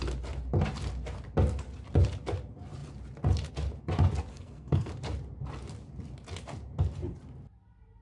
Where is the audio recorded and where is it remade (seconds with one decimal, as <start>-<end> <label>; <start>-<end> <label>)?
0.0-4.3 recorded; 4.3-4.9 remade; 4.9-8.0 recorded

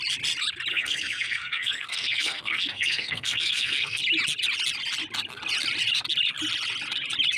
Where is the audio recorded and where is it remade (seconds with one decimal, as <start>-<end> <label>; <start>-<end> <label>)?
0.0-0.7 recorded; 0.7-4.0 remade; 4.0-7.4 recorded

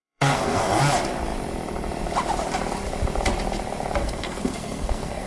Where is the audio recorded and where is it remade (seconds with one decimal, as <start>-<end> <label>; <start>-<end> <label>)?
0.0-0.8 remade; 0.8-4.0 recorded; 4.0-5.3 remade